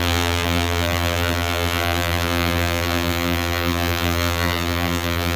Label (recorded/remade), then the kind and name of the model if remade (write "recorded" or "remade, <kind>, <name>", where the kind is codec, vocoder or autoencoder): remade, vocoder, BigVGAN v2